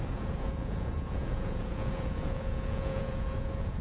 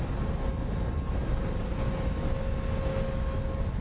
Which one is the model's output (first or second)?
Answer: first